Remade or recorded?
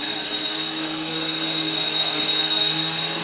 remade